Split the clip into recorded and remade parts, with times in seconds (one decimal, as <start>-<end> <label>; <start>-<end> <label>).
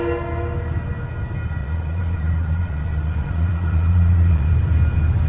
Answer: 0.0-1.6 recorded; 1.6-4.5 remade; 4.5-5.3 recorded